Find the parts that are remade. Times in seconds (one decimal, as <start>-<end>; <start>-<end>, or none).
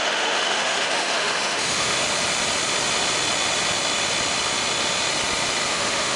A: 0.0-2.0; 5.7-6.2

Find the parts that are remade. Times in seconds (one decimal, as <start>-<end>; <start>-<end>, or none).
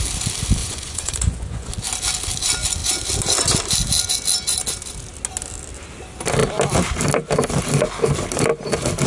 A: 0.6-1.7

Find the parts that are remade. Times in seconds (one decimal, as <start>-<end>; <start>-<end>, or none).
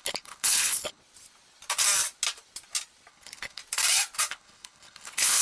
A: 0.0-1.0; 3.1-3.6; 4.3-5.4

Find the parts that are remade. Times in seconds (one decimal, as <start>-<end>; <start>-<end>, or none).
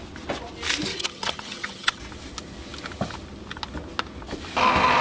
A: 0.9-2.0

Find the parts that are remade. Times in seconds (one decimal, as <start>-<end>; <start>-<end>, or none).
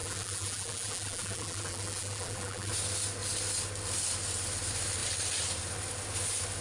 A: 0.0-2.7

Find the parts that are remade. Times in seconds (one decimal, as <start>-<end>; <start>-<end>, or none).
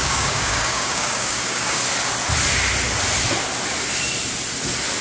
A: 0.0-1.8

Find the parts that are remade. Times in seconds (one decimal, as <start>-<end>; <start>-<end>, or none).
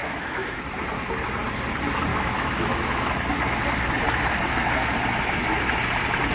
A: 0.0-0.6; 2.1-3.1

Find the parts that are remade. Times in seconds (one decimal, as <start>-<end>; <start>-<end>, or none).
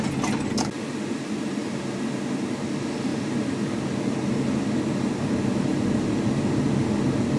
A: 3.1-4.3